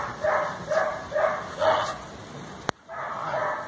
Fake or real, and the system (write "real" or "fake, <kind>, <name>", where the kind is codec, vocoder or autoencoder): real